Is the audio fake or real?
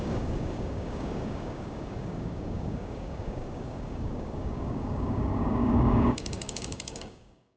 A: fake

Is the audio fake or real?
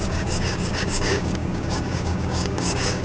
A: fake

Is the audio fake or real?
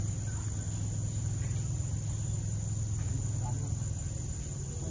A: real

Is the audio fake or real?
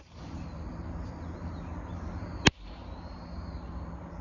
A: real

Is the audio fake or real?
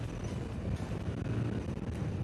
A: real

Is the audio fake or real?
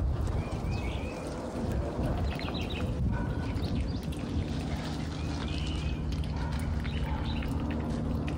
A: real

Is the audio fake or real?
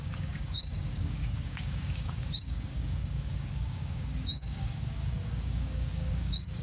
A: fake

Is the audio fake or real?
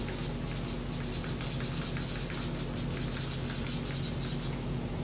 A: real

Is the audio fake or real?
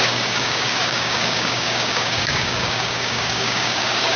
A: fake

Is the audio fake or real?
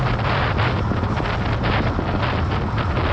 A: real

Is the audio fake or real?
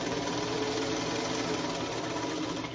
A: real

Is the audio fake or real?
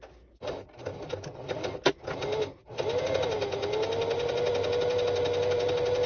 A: real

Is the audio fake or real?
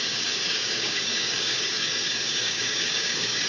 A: fake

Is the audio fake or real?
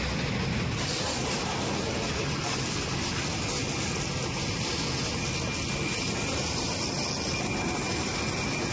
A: real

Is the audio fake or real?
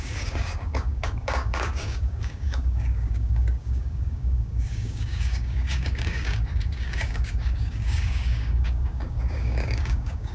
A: fake